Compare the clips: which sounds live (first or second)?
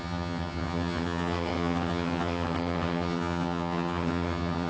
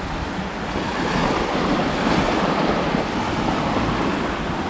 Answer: second